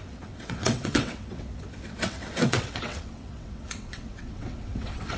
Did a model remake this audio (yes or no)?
yes